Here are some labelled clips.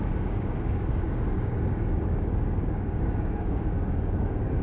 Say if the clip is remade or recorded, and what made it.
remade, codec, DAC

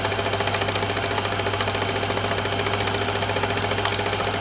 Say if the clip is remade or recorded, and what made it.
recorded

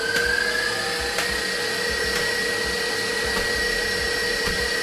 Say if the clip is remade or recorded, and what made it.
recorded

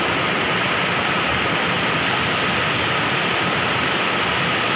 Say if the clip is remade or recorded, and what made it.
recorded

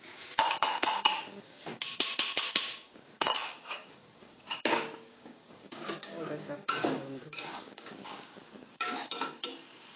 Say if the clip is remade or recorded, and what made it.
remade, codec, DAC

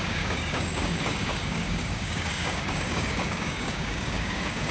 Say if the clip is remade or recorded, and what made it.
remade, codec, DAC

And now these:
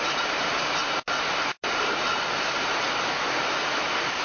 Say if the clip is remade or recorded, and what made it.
recorded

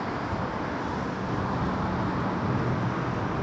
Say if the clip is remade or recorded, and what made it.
recorded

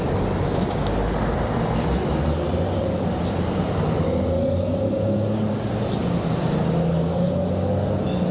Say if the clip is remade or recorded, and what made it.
recorded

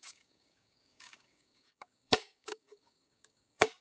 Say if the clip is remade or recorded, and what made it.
remade, codec, DAC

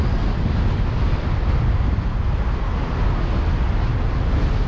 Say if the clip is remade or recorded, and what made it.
recorded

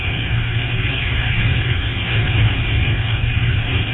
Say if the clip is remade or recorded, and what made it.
remade, codec, DAC